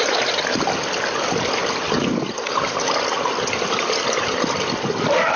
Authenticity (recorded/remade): recorded